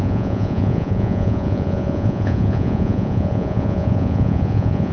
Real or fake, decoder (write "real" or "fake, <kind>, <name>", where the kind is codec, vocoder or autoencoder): fake, vocoder, Vocos